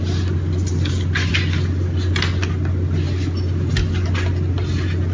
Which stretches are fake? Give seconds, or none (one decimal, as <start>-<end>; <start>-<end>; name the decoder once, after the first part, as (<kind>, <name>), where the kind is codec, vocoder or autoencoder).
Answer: none